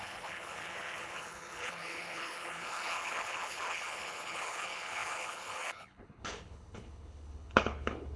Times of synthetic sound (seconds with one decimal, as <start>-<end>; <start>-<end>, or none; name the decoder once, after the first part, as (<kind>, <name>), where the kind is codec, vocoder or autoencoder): 0.0-8.2 (codec, HILCodec)